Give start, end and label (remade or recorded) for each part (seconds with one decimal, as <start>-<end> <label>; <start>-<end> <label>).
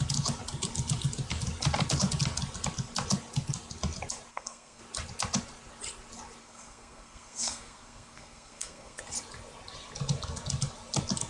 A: 0.0-4.3 recorded; 4.3-4.8 remade; 4.8-6.4 recorded; 6.4-9.0 remade; 9.0-11.3 recorded